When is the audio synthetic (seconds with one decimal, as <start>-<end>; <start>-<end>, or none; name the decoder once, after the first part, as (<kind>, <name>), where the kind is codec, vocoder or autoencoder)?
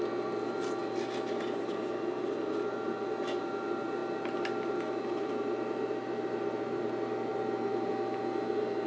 none